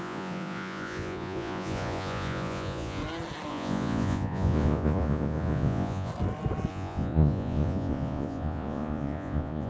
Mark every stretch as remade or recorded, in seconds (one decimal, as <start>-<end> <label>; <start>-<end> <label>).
0.0-3.0 remade; 3.0-3.5 recorded; 3.5-6.1 remade; 6.1-6.7 recorded; 6.7-9.7 remade